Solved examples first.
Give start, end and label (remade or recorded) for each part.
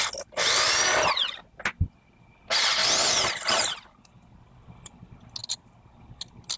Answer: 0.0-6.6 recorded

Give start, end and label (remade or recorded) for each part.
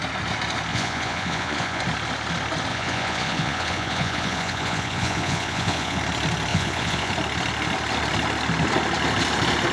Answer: 0.0-0.7 recorded; 0.7-1.8 remade; 1.8-2.7 recorded; 2.7-6.0 remade; 6.0-6.5 recorded; 6.5-7.1 remade; 7.1-9.7 recorded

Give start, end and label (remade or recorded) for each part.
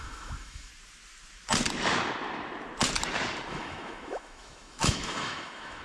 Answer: 0.0-0.7 remade; 0.7-3.5 recorded; 3.5-5.8 remade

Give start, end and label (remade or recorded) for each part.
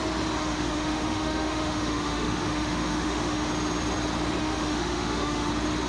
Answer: 0.0-0.4 recorded; 0.4-3.5 remade; 3.5-4.4 recorded; 4.4-5.5 remade; 5.5-5.9 recorded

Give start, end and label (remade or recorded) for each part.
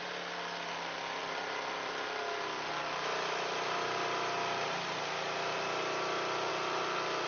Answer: 0.0-1.2 recorded; 1.2-2.7 remade; 2.7-6.5 recorded; 6.5-7.3 remade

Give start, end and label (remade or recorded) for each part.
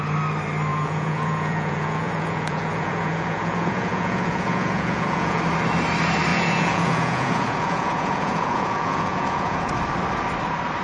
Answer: 0.0-0.7 recorded; 0.7-5.4 remade; 5.4-6.3 recorded; 6.3-9.7 remade; 9.7-10.8 recorded